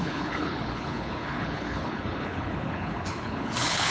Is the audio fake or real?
fake